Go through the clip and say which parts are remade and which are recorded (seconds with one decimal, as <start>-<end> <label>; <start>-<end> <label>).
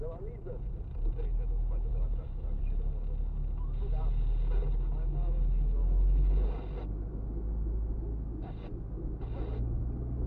0.0-1.9 recorded; 1.9-2.6 remade; 2.6-10.3 recorded